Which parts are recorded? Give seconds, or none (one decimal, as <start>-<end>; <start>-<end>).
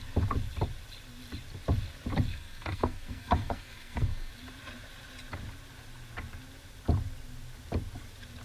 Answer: 0.0-2.3; 4.3-8.4